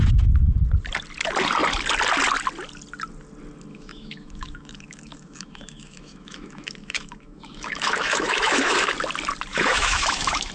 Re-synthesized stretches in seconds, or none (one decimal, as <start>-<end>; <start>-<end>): 3.7-8.9; 9.5-10.5